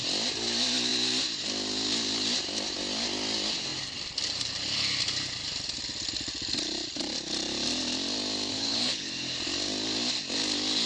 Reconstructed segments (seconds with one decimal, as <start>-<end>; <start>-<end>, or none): 8.5-9.1